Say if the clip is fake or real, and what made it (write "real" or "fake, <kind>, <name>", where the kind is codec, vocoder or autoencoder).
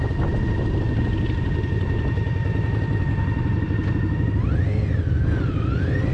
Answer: real